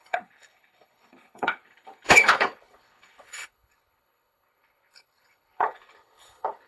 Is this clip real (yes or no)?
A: no